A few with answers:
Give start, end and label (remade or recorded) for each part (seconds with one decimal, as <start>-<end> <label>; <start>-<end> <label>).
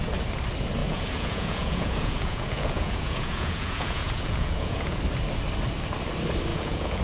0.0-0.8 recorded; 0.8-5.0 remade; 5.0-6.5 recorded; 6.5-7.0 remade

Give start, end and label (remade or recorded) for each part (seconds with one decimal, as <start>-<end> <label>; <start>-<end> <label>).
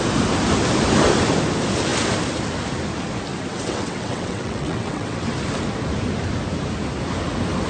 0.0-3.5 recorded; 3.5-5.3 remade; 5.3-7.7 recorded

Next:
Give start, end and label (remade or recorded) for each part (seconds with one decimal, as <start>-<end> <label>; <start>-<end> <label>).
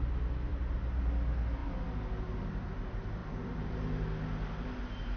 0.0-0.5 recorded; 0.5-1.0 remade; 1.0-3.2 recorded; 3.2-3.8 remade; 3.8-5.2 recorded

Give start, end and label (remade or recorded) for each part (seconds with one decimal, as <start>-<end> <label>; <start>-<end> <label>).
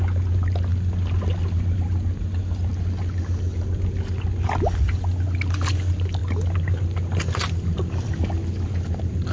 0.0-9.3 recorded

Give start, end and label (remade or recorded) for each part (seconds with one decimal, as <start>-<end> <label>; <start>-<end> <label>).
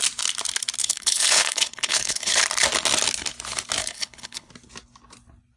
0.0-0.8 recorded; 0.8-2.4 remade; 2.4-3.8 recorded; 3.8-4.5 remade; 4.5-5.6 recorded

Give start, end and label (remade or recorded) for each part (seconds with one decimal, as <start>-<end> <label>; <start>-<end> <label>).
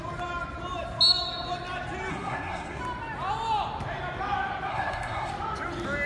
0.0-2.1 recorded; 2.1-2.8 remade; 2.8-4.7 recorded; 4.7-5.3 remade; 5.3-6.1 recorded